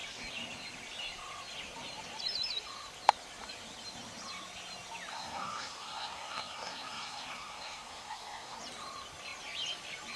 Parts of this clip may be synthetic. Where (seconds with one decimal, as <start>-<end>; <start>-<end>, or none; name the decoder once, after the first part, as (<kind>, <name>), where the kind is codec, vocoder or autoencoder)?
5.1-8.6 (codec, SNAC)

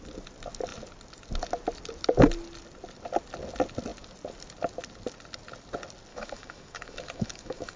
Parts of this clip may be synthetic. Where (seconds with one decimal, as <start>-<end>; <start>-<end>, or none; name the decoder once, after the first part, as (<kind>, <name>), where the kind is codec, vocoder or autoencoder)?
6.1-7.8 (autoencoder, DAC-VAE)

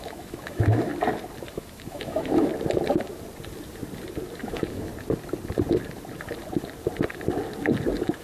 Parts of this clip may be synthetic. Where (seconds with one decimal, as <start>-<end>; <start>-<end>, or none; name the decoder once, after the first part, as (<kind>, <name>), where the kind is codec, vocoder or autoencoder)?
0.0-0.9 (autoencoder, DAC-VAE); 1.5-2.5; 4.3-4.9